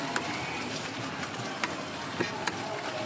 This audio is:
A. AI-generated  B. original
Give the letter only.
B